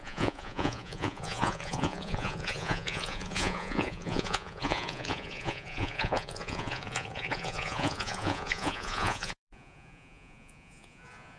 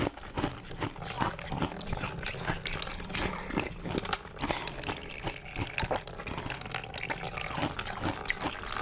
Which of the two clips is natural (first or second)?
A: second